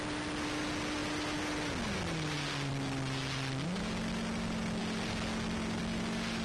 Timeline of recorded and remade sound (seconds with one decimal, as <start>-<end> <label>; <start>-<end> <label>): 0.0-6.4 recorded